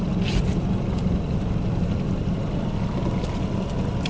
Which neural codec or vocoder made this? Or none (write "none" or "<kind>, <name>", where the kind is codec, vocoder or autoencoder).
none